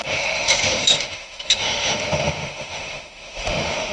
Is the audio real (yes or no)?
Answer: no